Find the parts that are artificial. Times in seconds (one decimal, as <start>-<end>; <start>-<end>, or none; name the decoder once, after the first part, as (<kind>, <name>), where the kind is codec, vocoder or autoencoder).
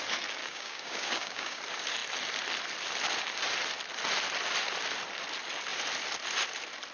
0.4-1.6 (codec, DAC)